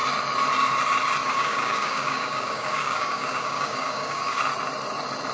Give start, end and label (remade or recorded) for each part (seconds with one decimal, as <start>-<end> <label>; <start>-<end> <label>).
0.0-1.2 recorded; 1.2-4.4 remade; 4.4-5.3 recorded